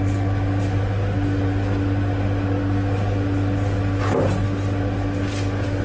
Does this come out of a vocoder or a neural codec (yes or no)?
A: no